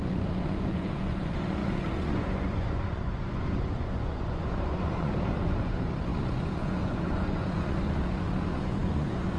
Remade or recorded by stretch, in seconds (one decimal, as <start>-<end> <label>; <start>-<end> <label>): 0.0-9.4 remade